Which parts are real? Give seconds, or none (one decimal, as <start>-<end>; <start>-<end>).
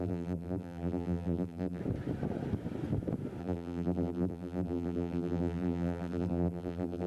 1.8-3.4